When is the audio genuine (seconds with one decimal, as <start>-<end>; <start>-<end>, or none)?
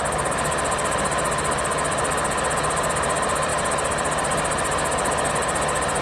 0.0-6.0